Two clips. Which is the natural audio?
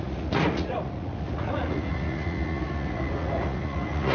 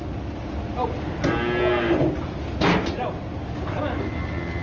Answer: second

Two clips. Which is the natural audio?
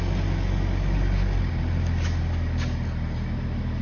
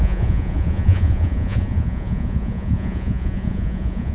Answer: first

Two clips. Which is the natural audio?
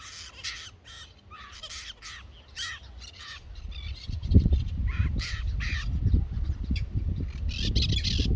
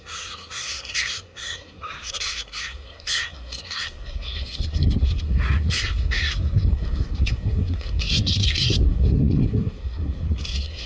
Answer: first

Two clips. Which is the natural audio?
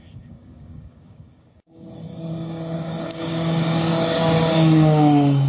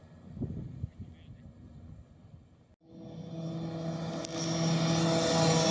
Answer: second